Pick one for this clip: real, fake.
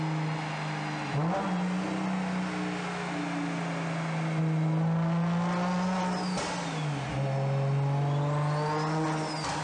real